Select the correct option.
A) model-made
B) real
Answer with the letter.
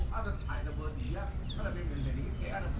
B